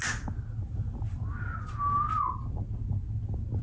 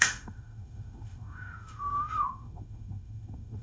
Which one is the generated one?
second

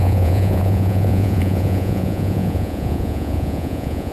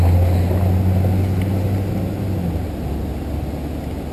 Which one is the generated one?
first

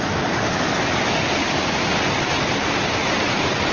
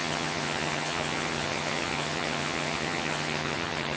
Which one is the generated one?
second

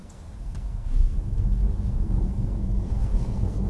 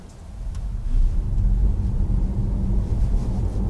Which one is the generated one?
first